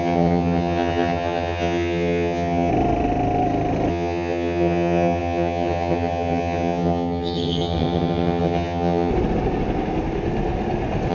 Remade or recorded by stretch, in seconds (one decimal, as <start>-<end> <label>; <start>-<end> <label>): 0.0-2.7 remade; 2.7-3.9 recorded; 3.9-9.1 remade; 9.1-11.1 recorded